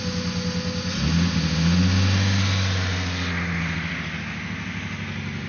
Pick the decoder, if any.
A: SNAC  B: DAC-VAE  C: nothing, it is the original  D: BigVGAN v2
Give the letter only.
C